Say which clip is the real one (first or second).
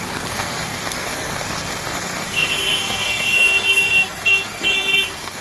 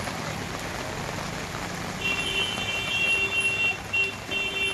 second